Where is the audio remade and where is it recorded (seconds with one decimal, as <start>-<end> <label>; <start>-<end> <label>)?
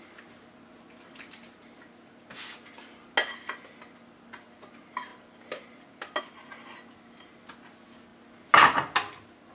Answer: 0.0-5.1 recorded; 5.1-6.2 remade; 6.2-9.5 recorded